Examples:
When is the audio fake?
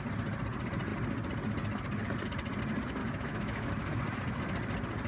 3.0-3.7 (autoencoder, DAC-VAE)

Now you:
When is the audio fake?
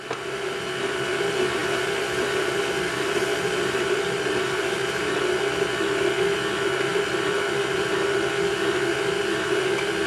1.6-5.1 (vocoder, BigVGAN v2); 6.9-8.5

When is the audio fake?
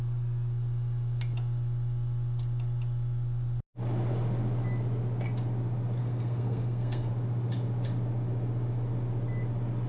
6.0-7.1 (codec, SNAC)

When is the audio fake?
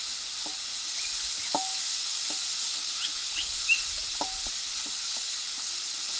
4.0-5.1 (vocoder, BigVGAN v2)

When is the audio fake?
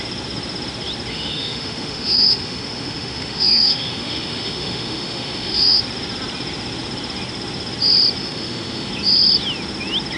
1.1-5.8 (autoencoder, DAC-VAE); 8.2-8.9